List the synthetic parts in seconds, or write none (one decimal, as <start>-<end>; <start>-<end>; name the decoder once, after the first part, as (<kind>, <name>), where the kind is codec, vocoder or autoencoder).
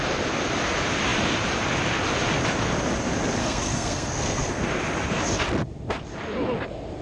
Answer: 3.4-4.7 (codec, SNAC)